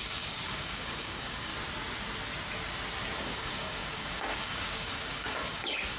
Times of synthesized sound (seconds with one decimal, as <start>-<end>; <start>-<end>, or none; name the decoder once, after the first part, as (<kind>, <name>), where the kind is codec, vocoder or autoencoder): 0.0-1.5 (codec, DAC); 3.2-6.0